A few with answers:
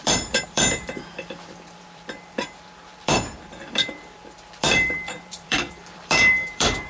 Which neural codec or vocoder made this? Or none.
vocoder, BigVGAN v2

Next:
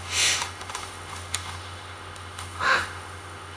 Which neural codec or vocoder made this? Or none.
autoencoder, DAC-VAE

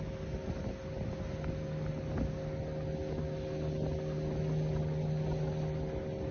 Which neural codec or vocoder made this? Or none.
none